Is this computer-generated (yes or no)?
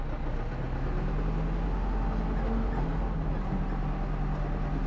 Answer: no